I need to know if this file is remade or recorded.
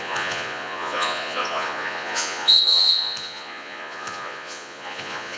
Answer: remade